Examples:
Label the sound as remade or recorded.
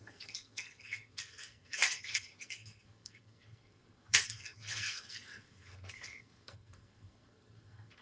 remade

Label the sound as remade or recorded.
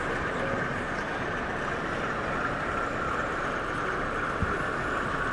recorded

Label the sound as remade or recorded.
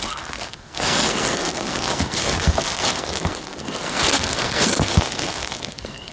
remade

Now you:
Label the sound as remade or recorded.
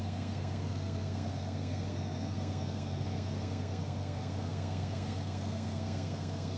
remade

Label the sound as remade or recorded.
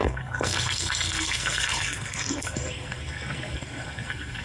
remade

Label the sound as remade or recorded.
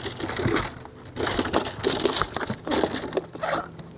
recorded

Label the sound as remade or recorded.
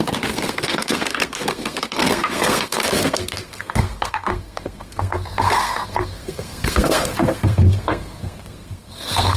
remade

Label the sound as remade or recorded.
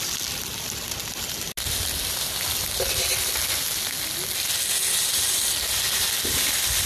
recorded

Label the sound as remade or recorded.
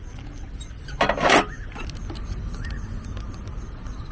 recorded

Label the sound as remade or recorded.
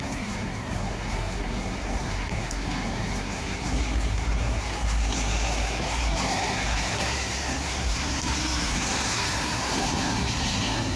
remade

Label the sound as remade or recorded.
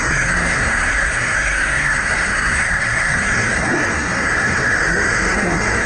remade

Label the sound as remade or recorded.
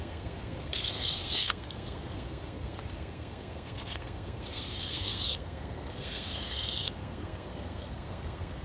remade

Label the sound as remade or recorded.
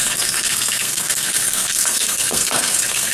remade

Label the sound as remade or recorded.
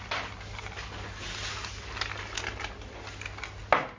recorded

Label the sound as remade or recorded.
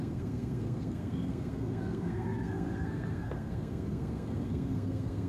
remade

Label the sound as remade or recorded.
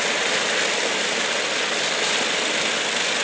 recorded